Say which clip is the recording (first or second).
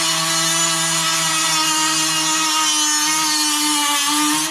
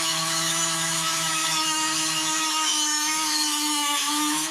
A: first